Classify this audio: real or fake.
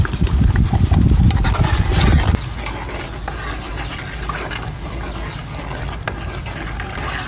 real